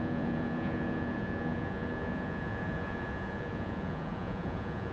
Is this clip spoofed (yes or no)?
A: yes